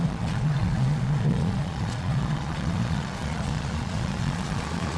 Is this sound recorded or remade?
remade